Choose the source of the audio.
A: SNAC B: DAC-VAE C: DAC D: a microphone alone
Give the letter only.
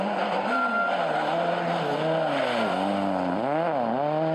D